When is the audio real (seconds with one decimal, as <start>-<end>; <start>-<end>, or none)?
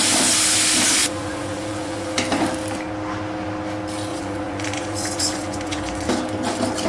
0.0-1.0; 2.1-4.1; 6.1-6.9